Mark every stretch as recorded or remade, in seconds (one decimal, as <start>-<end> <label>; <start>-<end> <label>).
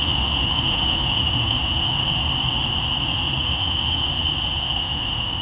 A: 0.0-2.2 remade; 2.2-3.0 recorded; 3.0-4.0 remade; 4.0-4.6 recorded; 4.6-5.4 remade